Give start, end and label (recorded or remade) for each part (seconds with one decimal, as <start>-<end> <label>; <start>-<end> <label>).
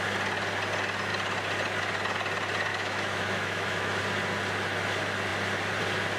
0.0-2.7 recorded; 2.7-4.0 remade; 4.0-6.2 recorded